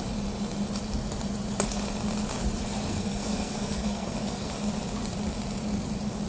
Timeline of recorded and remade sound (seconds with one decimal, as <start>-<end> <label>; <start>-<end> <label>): 0.0-2.9 recorded; 2.9-4.5 remade; 4.5-6.3 recorded